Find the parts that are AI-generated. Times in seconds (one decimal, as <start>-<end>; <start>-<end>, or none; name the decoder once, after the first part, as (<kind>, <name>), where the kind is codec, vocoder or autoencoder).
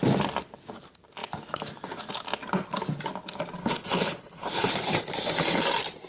3.6-4.7 (codec, HILCodec)